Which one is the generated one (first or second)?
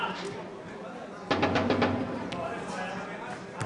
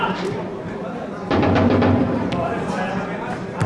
second